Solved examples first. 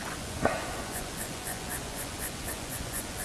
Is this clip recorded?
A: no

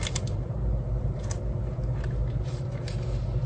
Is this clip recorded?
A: yes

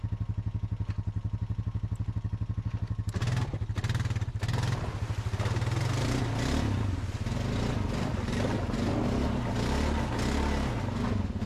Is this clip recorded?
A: yes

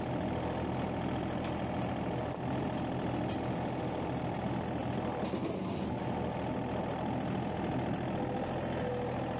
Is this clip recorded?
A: yes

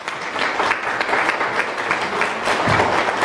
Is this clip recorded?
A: yes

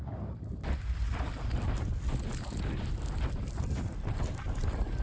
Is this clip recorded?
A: yes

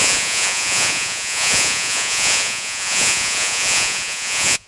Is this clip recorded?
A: no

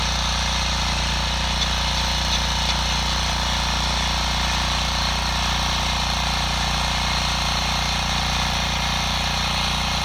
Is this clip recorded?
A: yes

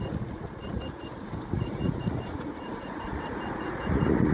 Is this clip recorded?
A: no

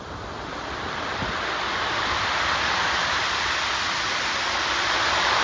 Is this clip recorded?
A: yes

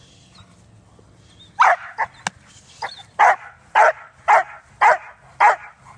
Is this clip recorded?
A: yes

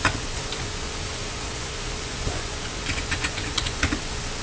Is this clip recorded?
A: no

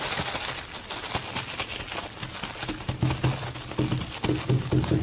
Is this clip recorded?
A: yes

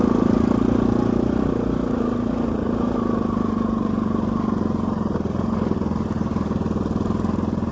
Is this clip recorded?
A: yes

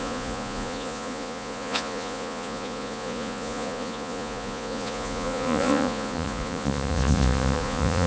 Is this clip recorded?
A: no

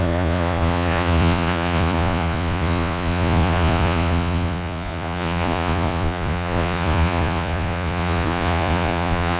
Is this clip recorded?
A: no